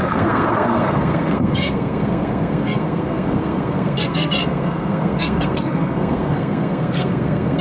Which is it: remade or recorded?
remade